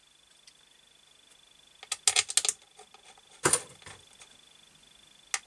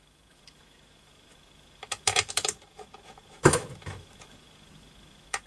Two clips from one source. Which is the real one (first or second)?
first